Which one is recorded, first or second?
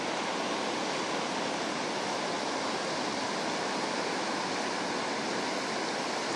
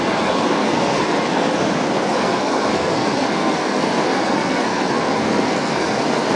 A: first